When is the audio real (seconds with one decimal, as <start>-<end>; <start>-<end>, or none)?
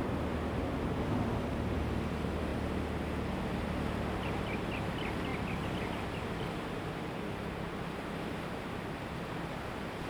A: 0.0-10.1